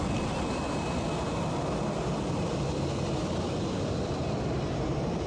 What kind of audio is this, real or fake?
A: real